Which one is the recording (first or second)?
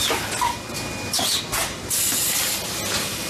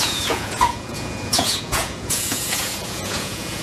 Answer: first